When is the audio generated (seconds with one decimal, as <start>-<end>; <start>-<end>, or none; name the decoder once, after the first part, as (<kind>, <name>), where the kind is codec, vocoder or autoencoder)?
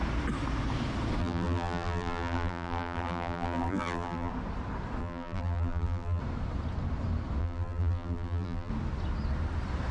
1.2-4.3 (vocoder, BigVGAN v2); 5.0-6.2; 7.4-8.7